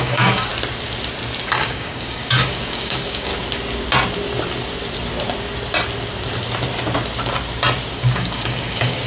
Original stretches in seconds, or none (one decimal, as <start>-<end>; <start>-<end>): 0.5-1.4; 3.3-7.9